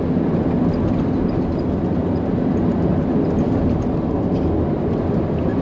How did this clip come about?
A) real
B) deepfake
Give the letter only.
A